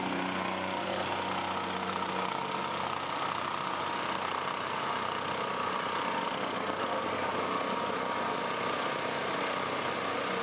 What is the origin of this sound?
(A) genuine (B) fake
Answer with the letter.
A